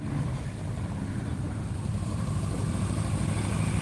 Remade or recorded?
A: remade